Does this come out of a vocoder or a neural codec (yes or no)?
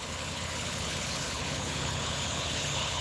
yes